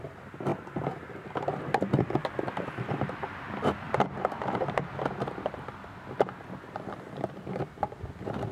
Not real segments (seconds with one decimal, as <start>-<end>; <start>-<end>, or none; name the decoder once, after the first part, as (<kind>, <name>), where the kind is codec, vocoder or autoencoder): 2.2-4.0 (vocoder, BigVGAN v2)